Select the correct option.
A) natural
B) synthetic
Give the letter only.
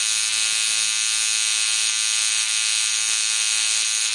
A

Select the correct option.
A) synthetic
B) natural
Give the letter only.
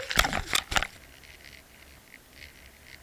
B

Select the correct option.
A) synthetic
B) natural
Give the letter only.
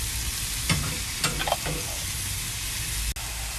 B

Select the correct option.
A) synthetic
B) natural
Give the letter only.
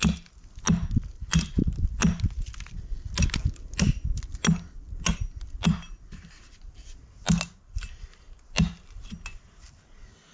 B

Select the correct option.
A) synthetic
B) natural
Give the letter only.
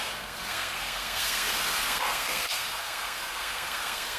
A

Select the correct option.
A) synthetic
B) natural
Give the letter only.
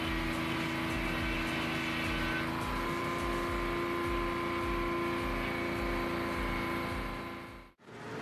B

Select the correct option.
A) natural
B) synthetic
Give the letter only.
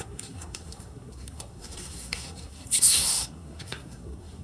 B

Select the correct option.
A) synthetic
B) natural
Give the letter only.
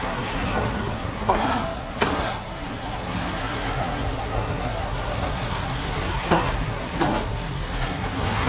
A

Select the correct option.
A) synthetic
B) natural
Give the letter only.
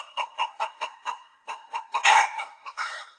A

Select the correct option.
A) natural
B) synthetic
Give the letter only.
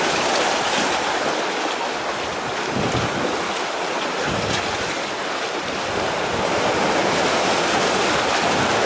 A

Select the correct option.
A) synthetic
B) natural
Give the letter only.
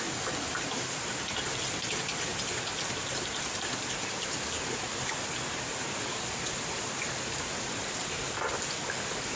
B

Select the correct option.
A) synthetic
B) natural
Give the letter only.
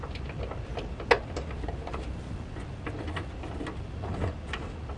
B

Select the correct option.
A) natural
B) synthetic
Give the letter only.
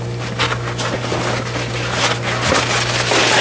A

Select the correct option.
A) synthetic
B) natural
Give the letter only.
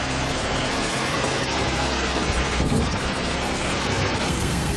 A